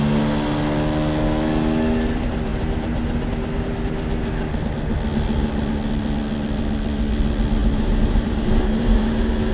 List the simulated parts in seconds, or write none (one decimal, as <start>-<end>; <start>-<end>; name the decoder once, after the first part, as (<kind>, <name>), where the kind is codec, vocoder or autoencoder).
7.6-9.5 (vocoder, BigVGAN v2)